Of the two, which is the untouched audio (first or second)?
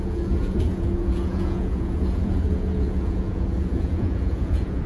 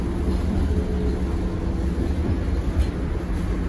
second